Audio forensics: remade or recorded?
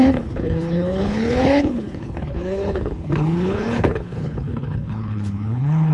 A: remade